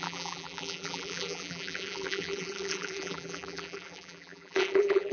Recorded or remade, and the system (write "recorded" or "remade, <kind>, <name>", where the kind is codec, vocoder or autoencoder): remade, vocoder, BigVGAN v2